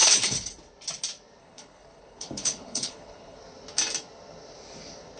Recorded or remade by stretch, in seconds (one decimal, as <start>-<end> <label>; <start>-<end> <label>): 0.0-0.5 remade; 0.5-1.4 recorded; 1.4-3.4 remade; 3.4-5.2 recorded